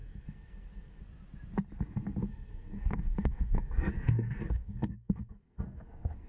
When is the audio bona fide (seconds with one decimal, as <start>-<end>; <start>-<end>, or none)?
1.0-2.3